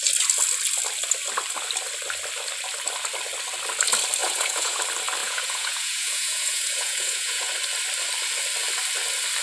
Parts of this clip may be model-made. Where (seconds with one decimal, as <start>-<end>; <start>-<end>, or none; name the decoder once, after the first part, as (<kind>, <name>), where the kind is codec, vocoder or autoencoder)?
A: 4.2-4.8 (vocoder, Vocos); 5.2-7.5